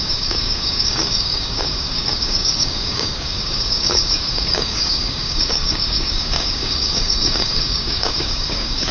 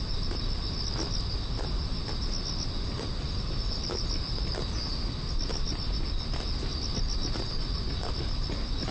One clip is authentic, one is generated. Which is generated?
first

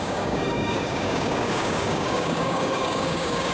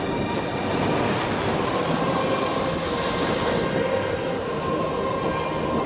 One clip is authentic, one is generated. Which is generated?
first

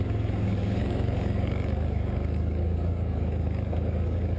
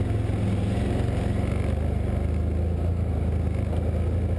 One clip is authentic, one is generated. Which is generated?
first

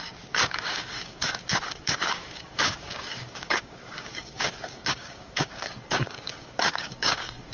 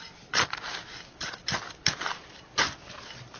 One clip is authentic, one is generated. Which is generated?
first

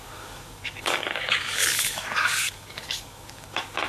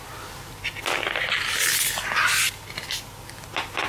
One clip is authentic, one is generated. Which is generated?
first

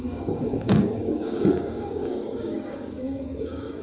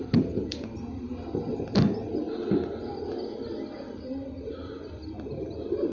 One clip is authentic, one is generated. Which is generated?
first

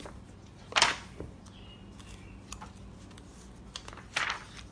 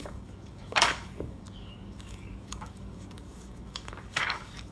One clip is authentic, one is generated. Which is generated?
second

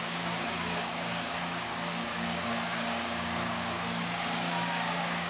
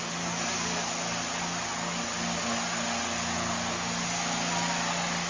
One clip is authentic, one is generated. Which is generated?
first